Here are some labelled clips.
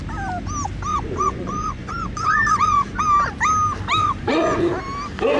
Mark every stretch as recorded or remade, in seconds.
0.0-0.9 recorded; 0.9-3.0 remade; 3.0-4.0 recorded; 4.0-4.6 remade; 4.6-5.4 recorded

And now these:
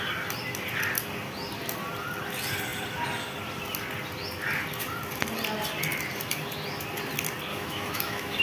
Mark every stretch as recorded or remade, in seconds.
0.0-7.5 recorded; 7.5-8.4 remade

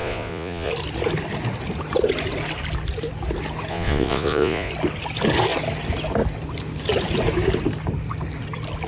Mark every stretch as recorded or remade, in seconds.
0.0-0.7 remade; 0.7-3.7 recorded; 3.7-4.7 remade; 4.7-8.9 recorded

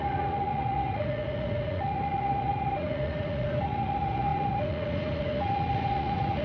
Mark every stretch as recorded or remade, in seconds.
0.0-6.4 remade

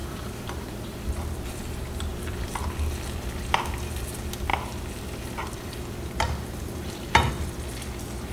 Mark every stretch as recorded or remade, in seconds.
0.0-1.1 remade; 1.1-2.1 recorded; 2.1-2.6 remade; 2.6-4.5 recorded; 4.5-7.3 remade; 7.3-8.3 recorded

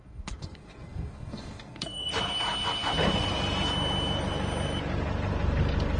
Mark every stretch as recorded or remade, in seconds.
0.0-2.1 remade; 2.1-6.0 recorded